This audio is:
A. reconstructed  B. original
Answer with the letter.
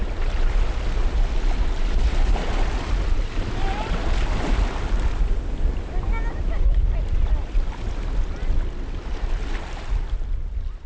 B